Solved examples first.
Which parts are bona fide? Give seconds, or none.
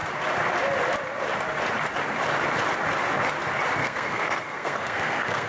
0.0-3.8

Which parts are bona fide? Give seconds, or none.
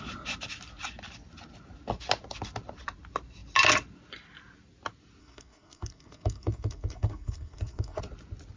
0.0-5.2; 8.0-8.6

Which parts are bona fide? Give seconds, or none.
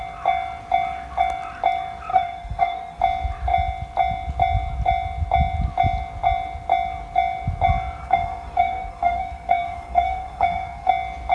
0.0-2.1; 3.0-8.0; 10.9-11.3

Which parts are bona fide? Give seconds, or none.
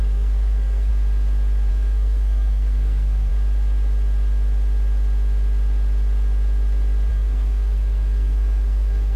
0.9-1.7; 3.3-7.1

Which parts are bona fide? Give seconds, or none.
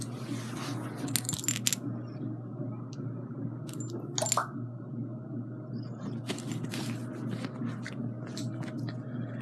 0.0-9.4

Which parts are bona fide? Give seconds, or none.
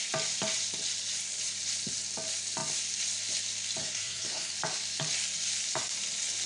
0.0-3.8; 4.5-6.5